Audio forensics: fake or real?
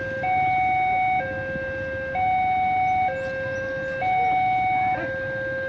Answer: real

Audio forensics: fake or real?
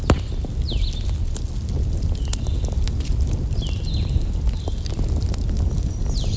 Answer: real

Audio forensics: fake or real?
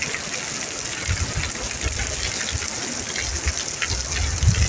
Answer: real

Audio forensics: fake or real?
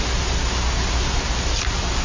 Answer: real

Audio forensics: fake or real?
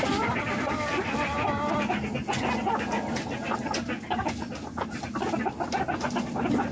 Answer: real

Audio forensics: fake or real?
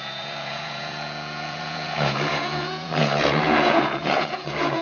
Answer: fake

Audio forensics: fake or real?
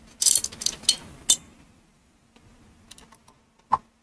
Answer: real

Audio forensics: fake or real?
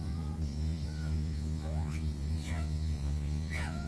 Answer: fake